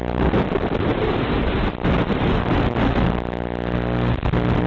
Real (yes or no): yes